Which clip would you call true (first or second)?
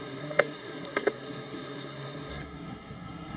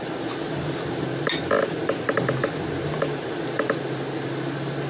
second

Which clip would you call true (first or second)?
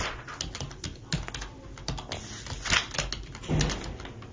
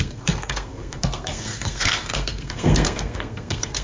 first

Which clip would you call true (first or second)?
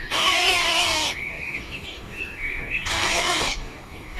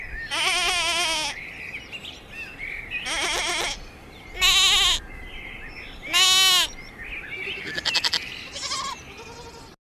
second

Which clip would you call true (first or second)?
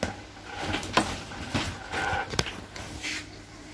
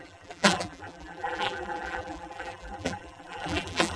first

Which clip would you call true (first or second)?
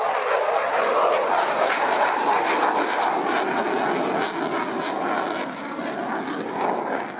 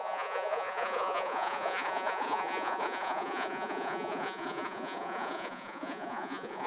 first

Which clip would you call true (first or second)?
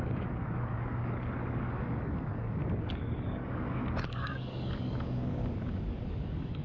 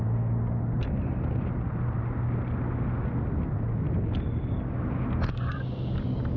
second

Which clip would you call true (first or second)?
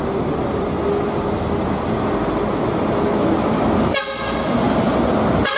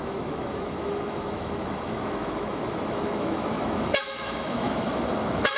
first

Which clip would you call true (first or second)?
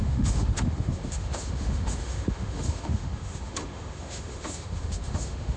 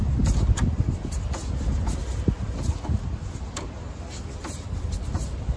second